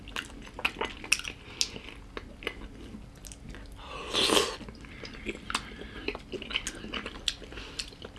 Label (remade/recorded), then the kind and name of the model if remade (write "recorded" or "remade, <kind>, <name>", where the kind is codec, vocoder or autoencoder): recorded